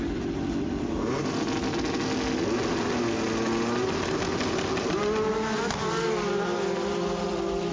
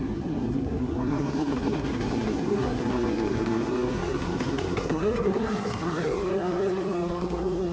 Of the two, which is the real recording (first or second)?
first